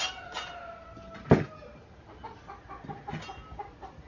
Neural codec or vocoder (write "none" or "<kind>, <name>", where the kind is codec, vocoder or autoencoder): none